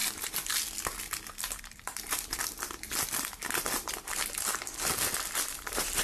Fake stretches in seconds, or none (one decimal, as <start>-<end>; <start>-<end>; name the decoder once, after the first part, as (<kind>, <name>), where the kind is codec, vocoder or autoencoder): 1.6-2.4 (vocoder, BigVGAN v2); 5.5-6.0